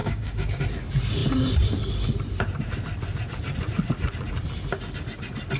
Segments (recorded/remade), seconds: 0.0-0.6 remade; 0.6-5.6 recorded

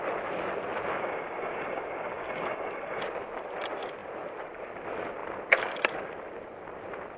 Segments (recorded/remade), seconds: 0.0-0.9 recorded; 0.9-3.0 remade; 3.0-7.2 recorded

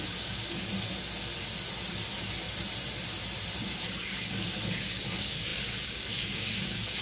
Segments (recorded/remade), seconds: 0.0-0.7 remade; 0.7-4.0 recorded; 4.0-7.0 remade